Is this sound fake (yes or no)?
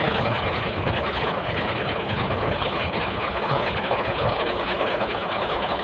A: yes